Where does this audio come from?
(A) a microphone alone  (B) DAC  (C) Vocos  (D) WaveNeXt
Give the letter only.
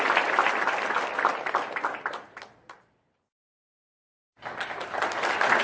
A